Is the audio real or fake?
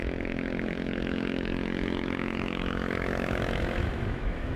fake